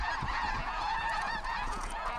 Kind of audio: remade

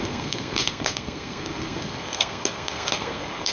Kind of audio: remade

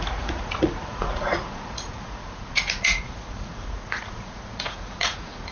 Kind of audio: remade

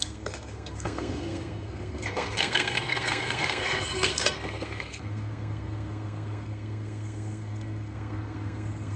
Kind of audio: remade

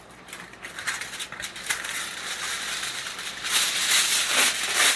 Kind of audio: recorded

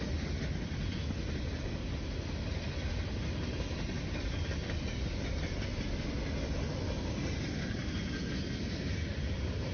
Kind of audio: recorded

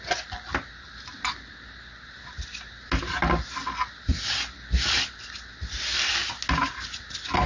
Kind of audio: recorded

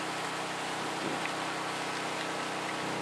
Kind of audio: recorded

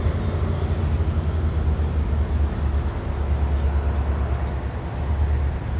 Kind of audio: recorded